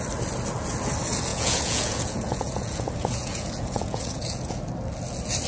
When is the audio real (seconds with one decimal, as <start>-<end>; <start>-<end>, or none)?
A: 0.0-1.3; 4.6-5.5